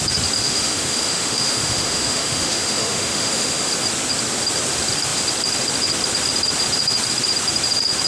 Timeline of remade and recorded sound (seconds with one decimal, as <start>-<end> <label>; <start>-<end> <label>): 0.0-0.4 recorded; 0.4-3.7 remade; 3.7-8.1 recorded